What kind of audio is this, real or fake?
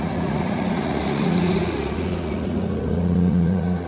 fake